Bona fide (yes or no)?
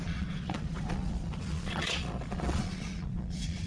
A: no